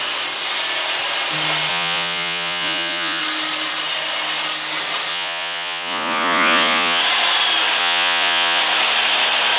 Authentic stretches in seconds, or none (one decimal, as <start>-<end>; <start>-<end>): 0.0-1.7; 3.2-5.1; 7.0-7.8; 8.6-9.6